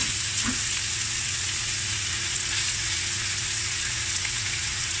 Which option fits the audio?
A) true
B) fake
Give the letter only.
B